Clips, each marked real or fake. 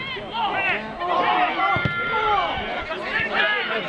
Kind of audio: real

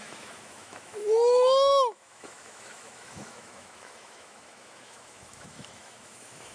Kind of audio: fake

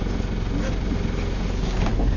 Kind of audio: real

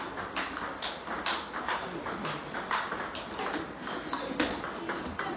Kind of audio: real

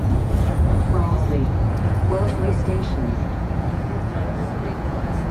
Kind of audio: fake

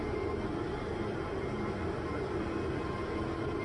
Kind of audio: real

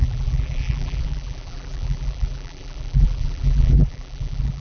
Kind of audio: fake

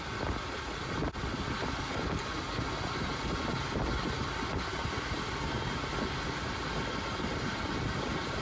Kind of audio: real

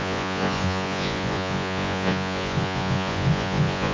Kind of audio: fake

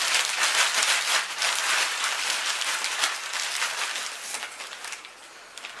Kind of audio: real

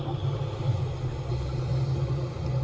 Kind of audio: real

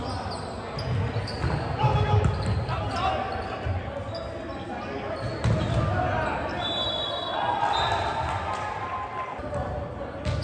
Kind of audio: real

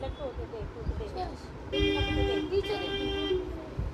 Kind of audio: real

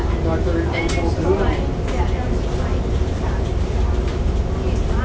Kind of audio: real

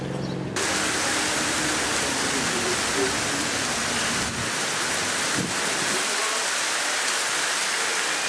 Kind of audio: real